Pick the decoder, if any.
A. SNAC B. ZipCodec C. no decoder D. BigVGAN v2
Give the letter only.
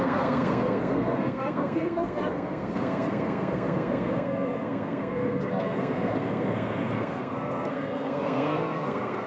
A